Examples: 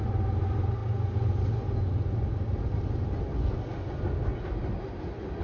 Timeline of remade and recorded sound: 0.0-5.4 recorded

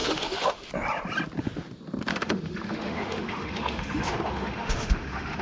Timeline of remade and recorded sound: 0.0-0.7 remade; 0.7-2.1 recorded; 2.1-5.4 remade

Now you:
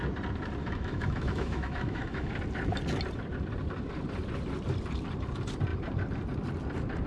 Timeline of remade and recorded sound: 0.0-0.6 recorded; 0.6-2.3 remade; 2.3-7.1 recorded

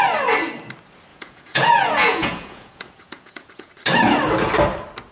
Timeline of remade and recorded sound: 0.0-1.1 recorded; 1.1-3.7 remade; 3.7-5.1 recorded

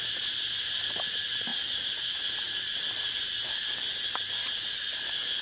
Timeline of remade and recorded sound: 0.0-5.4 recorded

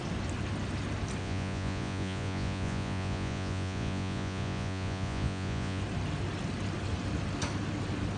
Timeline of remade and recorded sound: 0.0-1.2 recorded; 1.2-5.8 remade; 5.8-8.2 recorded

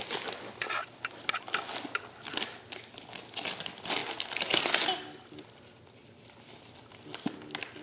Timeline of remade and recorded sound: 0.0-7.8 recorded